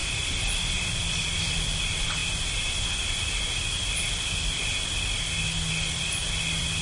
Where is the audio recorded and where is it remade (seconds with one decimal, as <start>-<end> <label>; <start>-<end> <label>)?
0.0-6.8 recorded